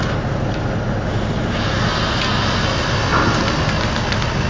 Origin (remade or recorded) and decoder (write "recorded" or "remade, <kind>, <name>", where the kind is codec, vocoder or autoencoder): recorded